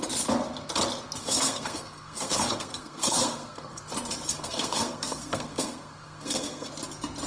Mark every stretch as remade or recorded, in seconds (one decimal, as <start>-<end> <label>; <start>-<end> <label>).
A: 0.0-1.2 recorded; 1.2-3.8 remade; 3.8-4.3 recorded; 4.3-6.7 remade; 6.7-7.3 recorded